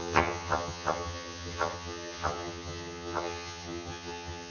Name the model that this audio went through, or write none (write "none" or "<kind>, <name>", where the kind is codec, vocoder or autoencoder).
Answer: vocoder, HiFi-GAN